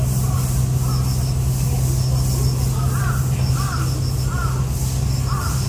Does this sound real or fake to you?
real